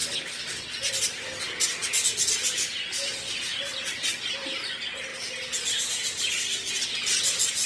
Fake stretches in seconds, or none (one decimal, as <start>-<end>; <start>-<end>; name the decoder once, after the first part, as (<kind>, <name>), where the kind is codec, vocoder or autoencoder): none